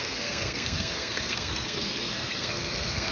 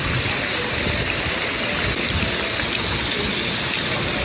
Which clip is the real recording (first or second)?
second